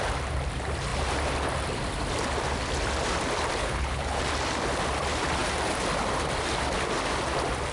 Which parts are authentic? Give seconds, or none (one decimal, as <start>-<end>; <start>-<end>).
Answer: 0.0-3.6; 4.2-7.7